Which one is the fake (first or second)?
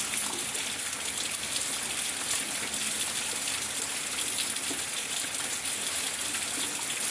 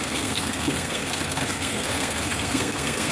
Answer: second